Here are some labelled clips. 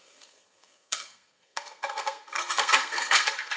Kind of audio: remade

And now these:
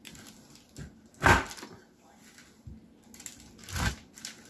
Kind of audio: recorded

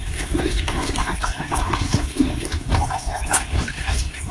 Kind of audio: remade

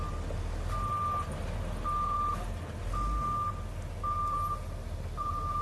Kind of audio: recorded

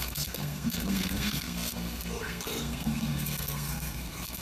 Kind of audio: remade